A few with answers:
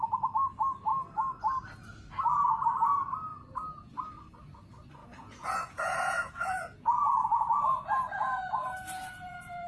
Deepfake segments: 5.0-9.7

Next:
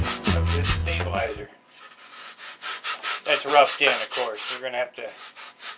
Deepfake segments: 0.0-3.9; 4.8-5.8

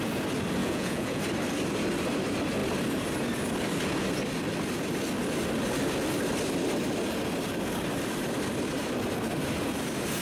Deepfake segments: 0.6-1.2

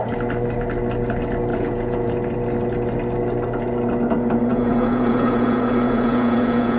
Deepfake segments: 1.5-2.1; 4.5-6.8